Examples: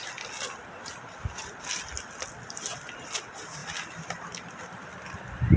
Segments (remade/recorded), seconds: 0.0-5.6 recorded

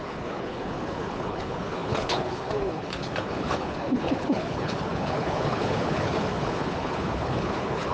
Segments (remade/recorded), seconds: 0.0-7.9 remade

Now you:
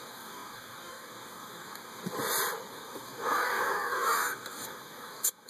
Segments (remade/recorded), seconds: 0.0-2.0 remade; 2.0-2.7 recorded; 2.7-5.5 remade

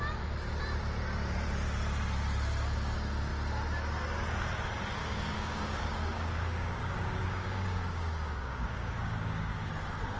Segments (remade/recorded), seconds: 0.0-5.0 recorded; 5.0-9.7 remade; 9.7-10.2 recorded

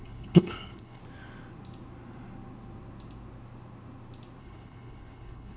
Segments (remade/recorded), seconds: 0.0-1.0 remade; 1.0-4.4 recorded; 4.4-5.6 remade